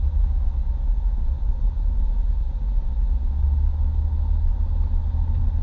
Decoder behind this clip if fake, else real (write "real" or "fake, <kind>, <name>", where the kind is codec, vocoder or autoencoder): real